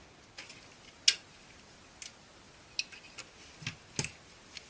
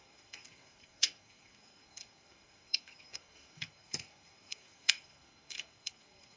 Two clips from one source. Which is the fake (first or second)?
second